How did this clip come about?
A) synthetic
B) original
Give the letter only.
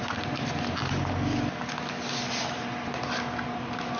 B